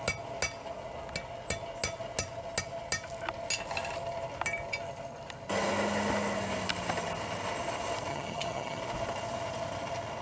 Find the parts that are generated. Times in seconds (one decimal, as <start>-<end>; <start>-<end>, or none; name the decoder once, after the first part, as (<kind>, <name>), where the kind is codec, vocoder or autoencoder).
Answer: 8.1-8.8 (vocoder, HiFi-GAN)